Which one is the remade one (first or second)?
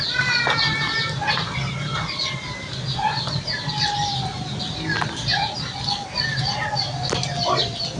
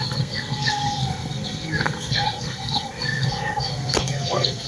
second